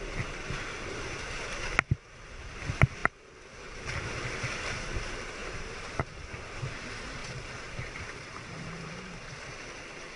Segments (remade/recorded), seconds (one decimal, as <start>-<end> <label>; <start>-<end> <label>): 0.0-5.4 recorded; 5.4-6.0 remade; 6.0-7.2 recorded; 7.2-9.2 remade; 9.2-10.2 recorded